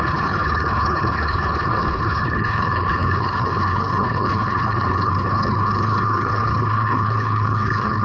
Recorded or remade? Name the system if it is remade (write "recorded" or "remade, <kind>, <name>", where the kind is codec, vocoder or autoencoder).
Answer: remade, codec, HILCodec